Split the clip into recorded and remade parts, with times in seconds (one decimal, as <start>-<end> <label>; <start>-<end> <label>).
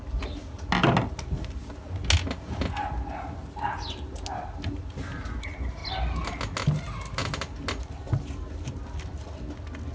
0.0-9.9 recorded